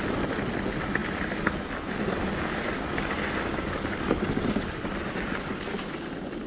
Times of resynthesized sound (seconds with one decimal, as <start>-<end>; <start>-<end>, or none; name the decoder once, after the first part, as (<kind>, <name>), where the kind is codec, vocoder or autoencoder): none